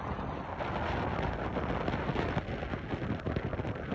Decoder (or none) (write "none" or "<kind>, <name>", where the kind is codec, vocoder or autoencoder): none